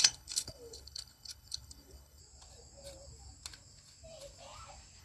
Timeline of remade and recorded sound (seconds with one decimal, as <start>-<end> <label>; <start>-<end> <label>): 0.0-2.2 remade; 2.2-5.0 recorded